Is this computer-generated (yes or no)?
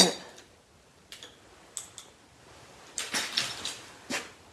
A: no